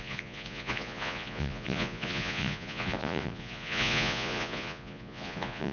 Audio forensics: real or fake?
fake